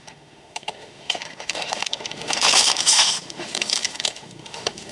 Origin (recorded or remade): remade